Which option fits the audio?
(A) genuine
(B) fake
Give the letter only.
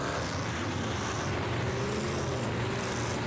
A